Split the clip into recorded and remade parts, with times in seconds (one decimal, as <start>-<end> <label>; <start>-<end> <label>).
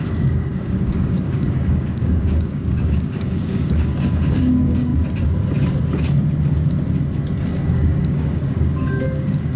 0.0-4.9 remade; 4.9-7.7 recorded; 7.7-9.6 remade